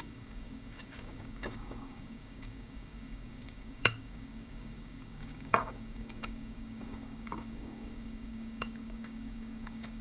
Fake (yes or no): yes